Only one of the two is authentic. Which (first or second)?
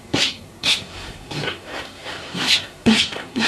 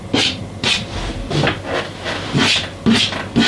second